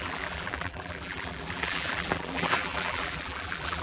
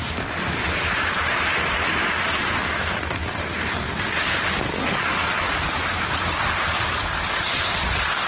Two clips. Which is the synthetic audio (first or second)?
first